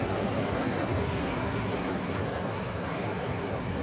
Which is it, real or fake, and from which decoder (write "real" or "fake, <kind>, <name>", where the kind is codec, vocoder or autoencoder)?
fake, codec, SNAC